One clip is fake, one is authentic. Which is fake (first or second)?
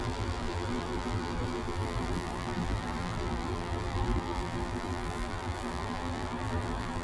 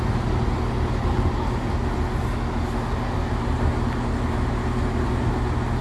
first